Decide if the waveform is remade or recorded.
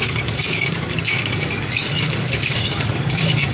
remade